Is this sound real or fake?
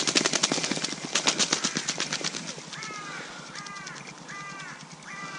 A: real